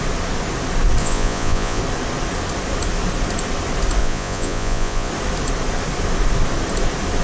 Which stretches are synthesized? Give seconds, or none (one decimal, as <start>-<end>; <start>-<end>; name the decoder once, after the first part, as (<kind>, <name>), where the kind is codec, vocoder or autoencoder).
1.0-1.8 (vocoder, Vocos); 4.0-5.1